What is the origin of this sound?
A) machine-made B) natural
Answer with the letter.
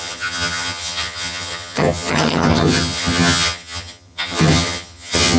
A